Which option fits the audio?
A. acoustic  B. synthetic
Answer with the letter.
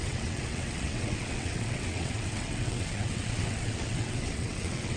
B